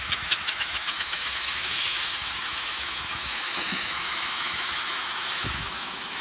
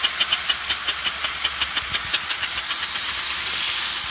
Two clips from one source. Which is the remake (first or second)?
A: first